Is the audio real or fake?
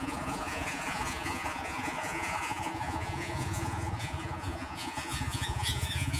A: fake